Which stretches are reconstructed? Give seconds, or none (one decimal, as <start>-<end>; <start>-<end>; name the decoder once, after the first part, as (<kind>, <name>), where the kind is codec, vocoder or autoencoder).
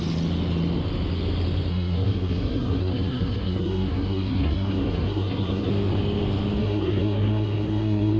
1.7-5.7 (codec, SNAC); 6.6-8.2